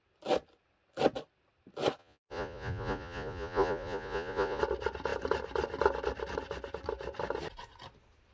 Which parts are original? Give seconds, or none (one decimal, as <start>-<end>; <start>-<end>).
0.0-2.0; 4.6-8.3